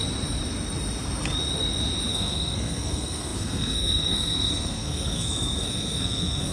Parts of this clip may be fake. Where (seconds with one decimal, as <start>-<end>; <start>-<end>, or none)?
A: 2.1-6.5